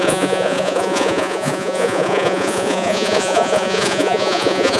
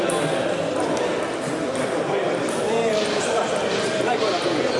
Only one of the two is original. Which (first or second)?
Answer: second